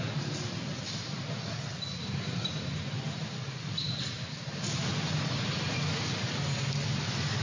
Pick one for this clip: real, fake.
real